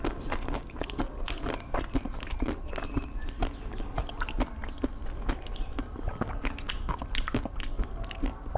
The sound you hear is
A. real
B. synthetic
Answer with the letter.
A